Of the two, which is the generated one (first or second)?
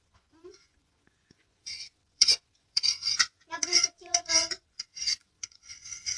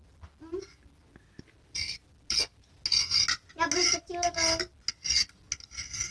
first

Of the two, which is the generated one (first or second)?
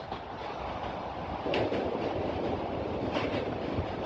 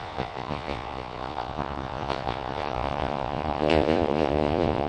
second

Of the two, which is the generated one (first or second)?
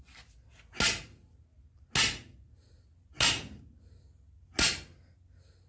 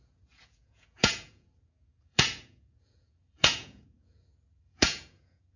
second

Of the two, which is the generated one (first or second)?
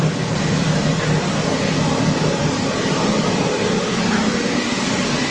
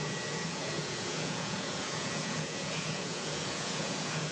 second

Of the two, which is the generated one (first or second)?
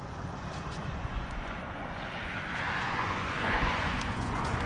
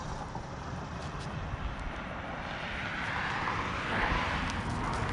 first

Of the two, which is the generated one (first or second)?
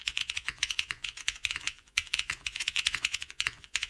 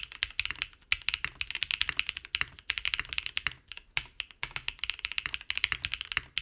first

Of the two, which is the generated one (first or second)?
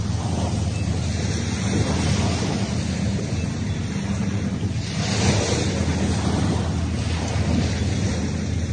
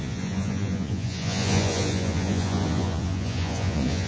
second